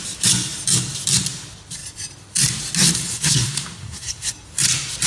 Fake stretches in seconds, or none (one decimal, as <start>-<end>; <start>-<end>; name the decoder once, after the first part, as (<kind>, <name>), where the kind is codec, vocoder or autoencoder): 3.1-4.3 (codec, SNAC)